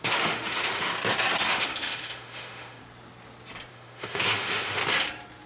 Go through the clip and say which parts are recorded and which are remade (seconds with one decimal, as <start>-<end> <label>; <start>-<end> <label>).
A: 0.0-0.9 remade; 0.9-1.5 recorded; 1.5-2.8 remade; 2.8-3.7 recorded; 3.7-4.8 remade; 4.8-5.5 recorded